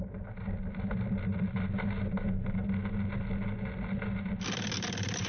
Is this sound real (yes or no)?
yes